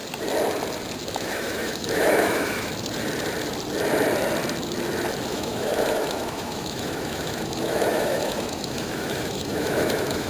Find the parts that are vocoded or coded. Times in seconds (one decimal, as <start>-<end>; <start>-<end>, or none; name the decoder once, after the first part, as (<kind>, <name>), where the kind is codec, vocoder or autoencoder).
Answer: 1.1-2.7 (autoencoder, DAC-VAE); 5.3-10.3